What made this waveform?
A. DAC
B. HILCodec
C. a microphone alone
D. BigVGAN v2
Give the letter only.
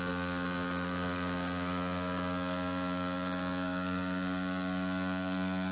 A